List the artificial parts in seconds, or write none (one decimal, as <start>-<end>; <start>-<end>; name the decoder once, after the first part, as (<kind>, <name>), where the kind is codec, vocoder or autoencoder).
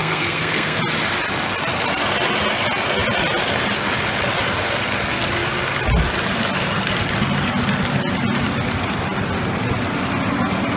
0.0-0.8 (codec, SNAC)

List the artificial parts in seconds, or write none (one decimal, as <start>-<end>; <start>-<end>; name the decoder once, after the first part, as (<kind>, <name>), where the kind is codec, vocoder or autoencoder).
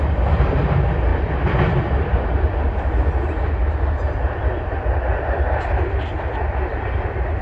none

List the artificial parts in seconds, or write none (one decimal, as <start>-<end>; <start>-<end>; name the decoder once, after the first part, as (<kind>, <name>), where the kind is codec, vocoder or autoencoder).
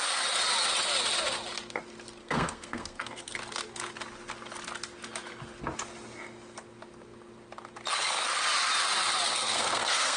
2.2-3.3 (codec, SNAC); 9.3-10.2